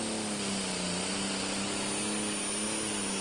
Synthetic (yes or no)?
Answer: no